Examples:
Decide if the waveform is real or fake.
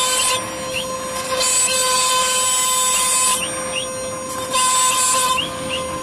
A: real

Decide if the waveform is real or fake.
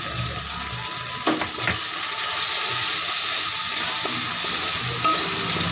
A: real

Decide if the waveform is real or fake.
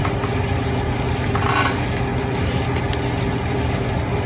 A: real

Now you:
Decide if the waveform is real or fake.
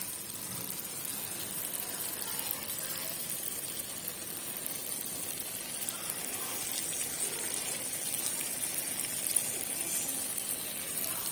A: real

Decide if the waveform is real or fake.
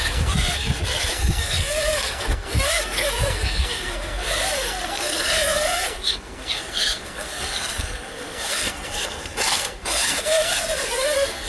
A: fake